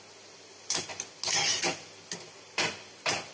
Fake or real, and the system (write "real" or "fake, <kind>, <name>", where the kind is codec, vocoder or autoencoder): real